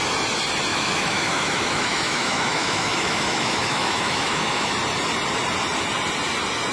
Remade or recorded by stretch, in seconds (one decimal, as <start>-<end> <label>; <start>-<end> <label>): 0.0-0.7 recorded; 0.7-4.7 remade; 4.7-6.7 recorded